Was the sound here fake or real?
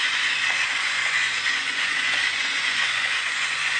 fake